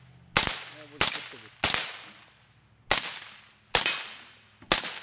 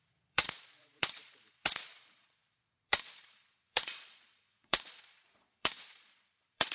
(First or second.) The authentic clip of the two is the first